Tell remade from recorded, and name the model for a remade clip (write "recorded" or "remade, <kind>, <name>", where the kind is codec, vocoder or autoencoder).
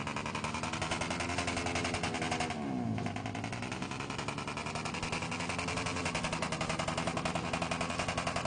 recorded